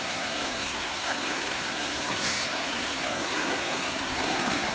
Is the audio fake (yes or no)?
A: yes